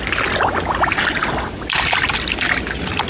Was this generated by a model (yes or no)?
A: no